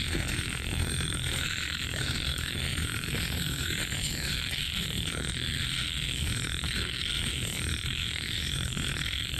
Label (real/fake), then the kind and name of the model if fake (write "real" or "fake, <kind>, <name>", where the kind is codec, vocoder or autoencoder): fake, codec, SNAC